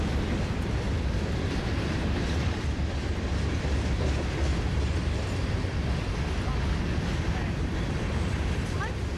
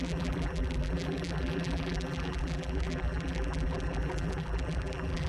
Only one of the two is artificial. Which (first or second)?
second